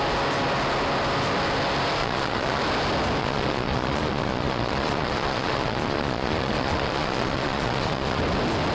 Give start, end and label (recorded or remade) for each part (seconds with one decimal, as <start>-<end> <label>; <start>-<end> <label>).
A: 0.0-2.0 recorded; 2.0-2.6 remade; 2.6-3.2 recorded; 3.2-8.2 remade; 8.2-8.7 recorded